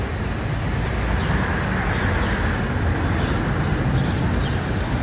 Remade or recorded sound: recorded